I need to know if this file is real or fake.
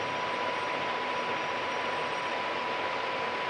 real